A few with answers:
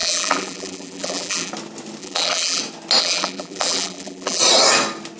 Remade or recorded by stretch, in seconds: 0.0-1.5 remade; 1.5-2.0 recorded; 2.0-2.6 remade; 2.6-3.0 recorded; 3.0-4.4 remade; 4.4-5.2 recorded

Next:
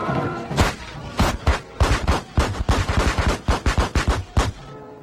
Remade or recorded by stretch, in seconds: 0.0-1.5 remade; 1.5-4.5 recorded; 4.5-5.0 remade

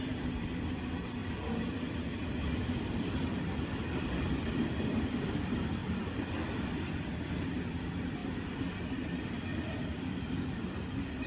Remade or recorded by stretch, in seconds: 0.0-11.3 remade